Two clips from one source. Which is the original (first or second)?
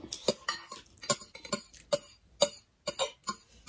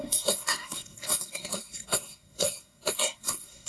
first